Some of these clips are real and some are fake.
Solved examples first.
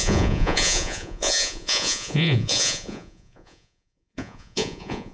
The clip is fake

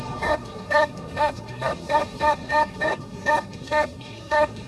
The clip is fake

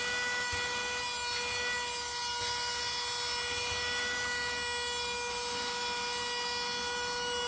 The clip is real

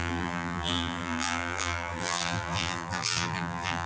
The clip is fake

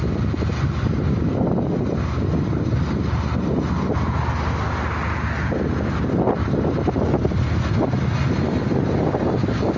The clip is real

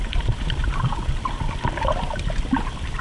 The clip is real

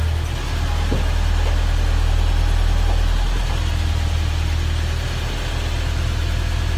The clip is real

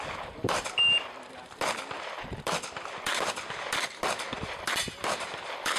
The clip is fake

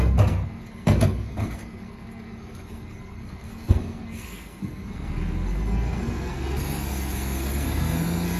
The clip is fake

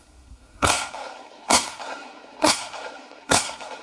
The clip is fake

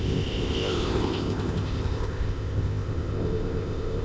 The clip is fake